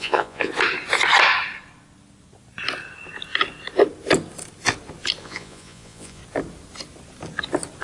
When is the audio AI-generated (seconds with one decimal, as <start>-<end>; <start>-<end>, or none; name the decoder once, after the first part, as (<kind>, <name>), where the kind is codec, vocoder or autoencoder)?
0.0-0.5 (vocoder, Vocos); 5.2-6.2